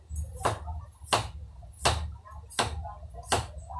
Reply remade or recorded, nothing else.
recorded